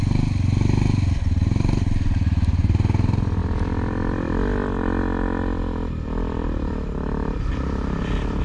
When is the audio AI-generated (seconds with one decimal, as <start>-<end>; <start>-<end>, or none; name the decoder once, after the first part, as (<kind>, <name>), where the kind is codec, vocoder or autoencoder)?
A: none